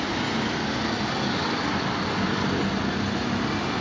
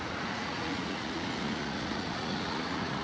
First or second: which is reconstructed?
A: second